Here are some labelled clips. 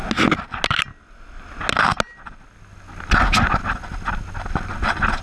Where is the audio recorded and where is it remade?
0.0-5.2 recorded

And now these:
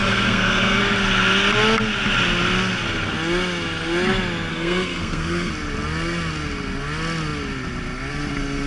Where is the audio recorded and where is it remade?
0.0-0.8 remade; 0.8-4.5 recorded; 4.5-5.5 remade; 5.5-8.7 recorded

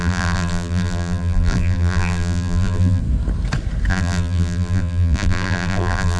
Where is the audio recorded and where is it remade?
0.0-3.0 remade; 3.0-3.9 recorded; 3.9-6.2 remade

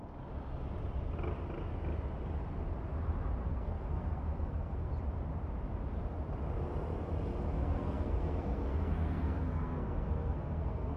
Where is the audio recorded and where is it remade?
0.0-3.5 recorded; 3.5-4.9 remade; 4.9-7.6 recorded; 7.6-11.0 remade

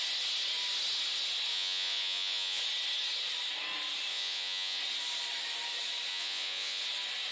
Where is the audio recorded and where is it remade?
0.0-1.5 recorded; 1.5-2.6 remade; 2.6-4.1 recorded; 4.1-4.8 remade; 4.8-6.1 recorded; 6.1-6.8 remade; 6.8-7.3 recorded

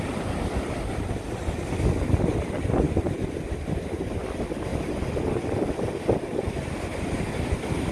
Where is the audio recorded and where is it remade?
0.0-7.9 recorded

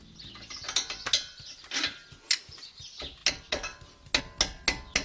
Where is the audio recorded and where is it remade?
0.0-5.0 recorded